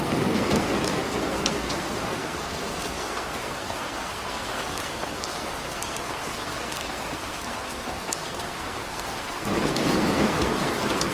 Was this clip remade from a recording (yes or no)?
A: yes